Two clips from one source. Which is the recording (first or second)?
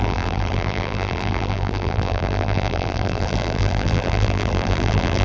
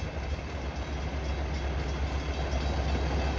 second